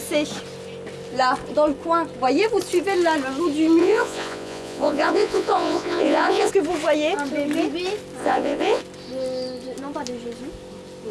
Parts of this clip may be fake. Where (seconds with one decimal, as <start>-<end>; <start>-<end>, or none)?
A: 3.8-6.5; 8.2-8.8